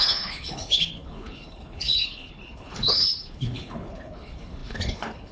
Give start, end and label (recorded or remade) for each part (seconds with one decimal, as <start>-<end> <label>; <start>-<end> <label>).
0.0-5.3 remade

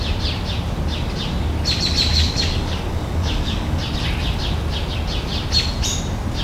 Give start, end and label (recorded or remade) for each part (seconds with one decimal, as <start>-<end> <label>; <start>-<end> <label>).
0.0-2.1 recorded; 2.1-3.8 remade; 3.8-6.4 recorded

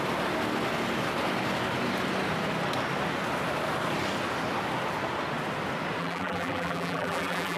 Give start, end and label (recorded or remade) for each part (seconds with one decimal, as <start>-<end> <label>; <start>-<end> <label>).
0.0-6.0 recorded; 6.0-7.6 remade

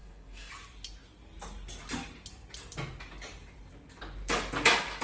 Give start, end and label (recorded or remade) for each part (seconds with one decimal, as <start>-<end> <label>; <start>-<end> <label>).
0.0-0.5 remade; 0.5-5.0 recorded

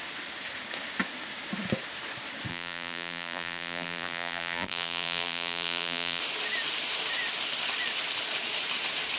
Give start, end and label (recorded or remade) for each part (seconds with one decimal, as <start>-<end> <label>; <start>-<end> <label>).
0.0-2.5 recorded; 2.5-6.2 remade; 6.2-9.2 recorded

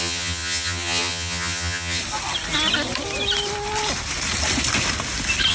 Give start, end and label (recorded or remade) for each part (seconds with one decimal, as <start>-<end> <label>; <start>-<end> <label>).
0.0-2.0 remade; 2.0-5.5 recorded